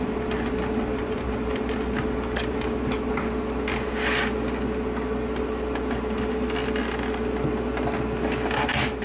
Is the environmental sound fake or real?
real